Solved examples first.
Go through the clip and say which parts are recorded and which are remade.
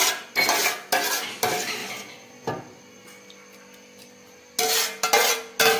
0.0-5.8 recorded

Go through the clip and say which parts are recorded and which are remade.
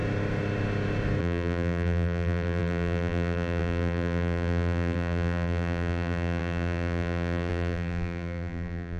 0.0-1.2 recorded; 1.2-9.0 remade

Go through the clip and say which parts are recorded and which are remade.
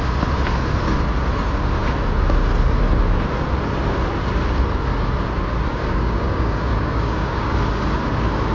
0.0-5.7 recorded; 5.7-7.5 remade; 7.5-8.5 recorded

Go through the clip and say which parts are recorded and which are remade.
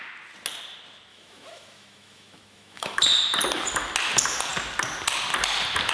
0.0-1.1 recorded; 1.1-3.0 remade; 3.0-5.9 recorded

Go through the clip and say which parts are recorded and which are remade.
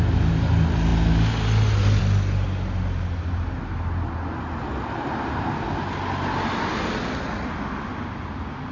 0.0-8.7 recorded